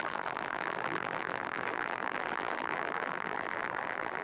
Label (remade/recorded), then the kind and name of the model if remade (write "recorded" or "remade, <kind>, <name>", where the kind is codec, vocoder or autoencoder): remade, vocoder, BigVGAN v2